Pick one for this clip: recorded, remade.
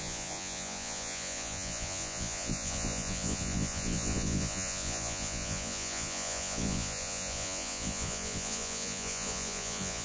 remade